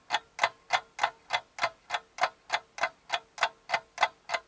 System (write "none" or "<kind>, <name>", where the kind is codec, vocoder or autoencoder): none